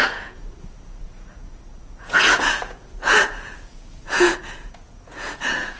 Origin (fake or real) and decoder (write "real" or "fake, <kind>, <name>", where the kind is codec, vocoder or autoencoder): fake, vocoder, Vocos